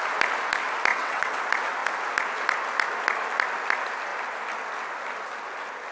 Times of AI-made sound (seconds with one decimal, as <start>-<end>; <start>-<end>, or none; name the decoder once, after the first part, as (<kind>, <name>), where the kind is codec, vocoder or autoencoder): 0.9-1.4 (vocoder, WaveNeXt)